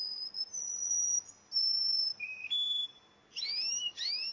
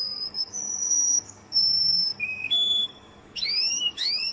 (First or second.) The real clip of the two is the first